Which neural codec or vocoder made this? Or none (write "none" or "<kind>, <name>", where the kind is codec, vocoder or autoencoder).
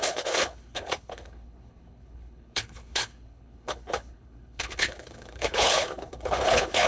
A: codec, HILCodec